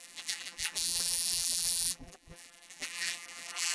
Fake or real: fake